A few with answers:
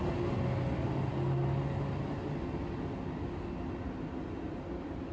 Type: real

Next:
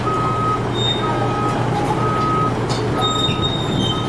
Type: real